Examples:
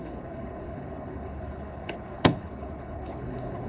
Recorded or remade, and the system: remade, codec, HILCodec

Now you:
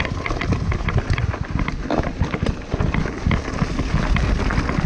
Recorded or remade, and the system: recorded